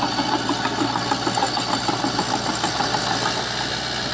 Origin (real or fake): real